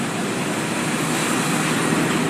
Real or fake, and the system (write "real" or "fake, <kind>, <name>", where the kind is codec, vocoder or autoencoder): real